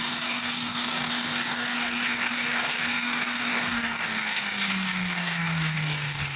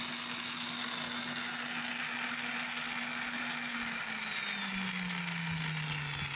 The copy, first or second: first